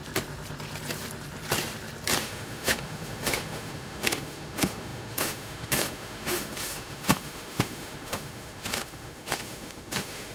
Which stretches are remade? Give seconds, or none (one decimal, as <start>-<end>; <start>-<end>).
2.2-10.3